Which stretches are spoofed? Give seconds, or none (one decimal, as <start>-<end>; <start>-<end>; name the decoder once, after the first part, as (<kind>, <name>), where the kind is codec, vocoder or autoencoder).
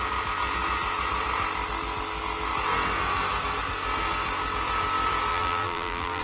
5.3-6.2 (vocoder, BigVGAN v2)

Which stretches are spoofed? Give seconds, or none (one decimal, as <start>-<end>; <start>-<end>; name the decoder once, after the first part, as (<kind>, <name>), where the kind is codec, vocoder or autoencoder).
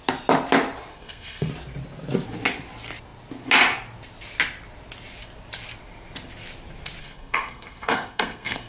0.9-1.5 (codec, SNAC); 7.0-8.7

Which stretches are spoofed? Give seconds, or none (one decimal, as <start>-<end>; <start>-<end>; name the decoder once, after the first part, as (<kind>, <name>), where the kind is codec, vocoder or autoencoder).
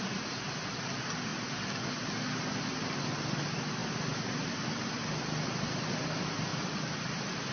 none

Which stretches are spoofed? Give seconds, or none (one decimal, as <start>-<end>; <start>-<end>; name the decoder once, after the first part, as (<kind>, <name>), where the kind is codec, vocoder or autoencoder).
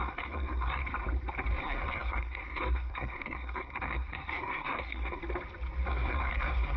0.0-0.8 (codec, SNAC); 1.6-5.2; 5.9-6.8